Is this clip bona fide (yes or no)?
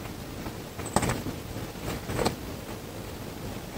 yes